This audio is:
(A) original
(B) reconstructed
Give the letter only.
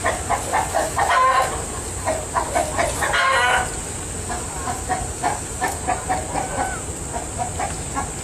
A